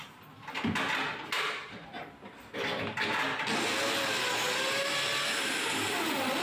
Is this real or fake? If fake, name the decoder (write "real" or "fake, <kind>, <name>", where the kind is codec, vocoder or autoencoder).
real